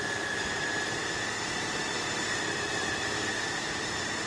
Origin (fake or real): fake